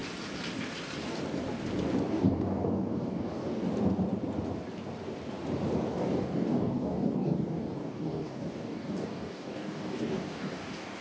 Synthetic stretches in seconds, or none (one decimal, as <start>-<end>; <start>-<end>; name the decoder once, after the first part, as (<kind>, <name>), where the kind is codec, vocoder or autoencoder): 2.1-3.6 (codec, DAC); 5.9-11.0

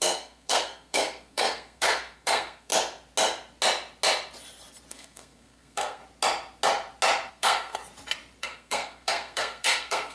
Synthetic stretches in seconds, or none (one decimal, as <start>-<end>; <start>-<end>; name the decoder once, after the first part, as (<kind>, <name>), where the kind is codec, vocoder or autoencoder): 0.0-2.7 (codec, SNAC); 4.9-6.0; 7.3-7.8; 8.4-10.1

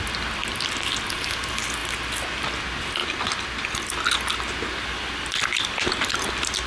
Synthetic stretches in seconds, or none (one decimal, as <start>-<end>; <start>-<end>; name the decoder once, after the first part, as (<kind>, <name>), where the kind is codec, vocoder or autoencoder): none